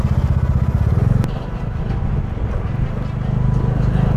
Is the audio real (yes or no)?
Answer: yes